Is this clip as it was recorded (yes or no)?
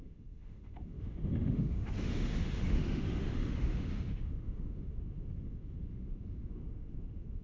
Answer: no